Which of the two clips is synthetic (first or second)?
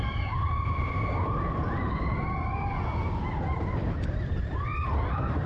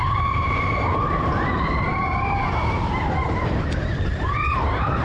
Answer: second